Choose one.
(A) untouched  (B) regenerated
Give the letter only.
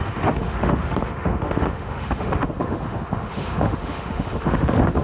B